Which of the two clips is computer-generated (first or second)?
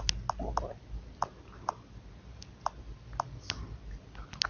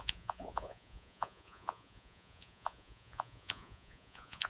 second